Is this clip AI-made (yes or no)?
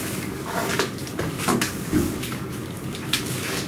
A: yes